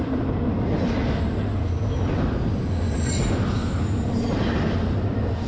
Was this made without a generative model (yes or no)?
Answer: yes